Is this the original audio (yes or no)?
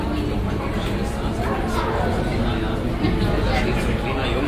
yes